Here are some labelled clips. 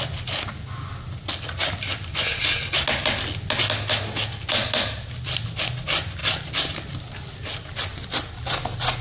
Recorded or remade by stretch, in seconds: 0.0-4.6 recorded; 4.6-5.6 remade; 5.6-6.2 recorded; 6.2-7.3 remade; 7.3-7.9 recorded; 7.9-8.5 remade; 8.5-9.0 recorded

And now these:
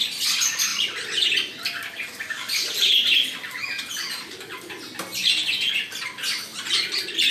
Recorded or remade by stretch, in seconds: 0.0-0.7 recorded; 0.7-4.2 remade; 4.2-6.5 recorded; 6.5-7.3 remade

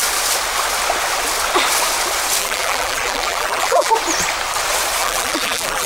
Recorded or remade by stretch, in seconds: 0.0-2.4 recorded; 2.4-3.9 remade; 3.9-5.0 recorded; 5.0-5.9 remade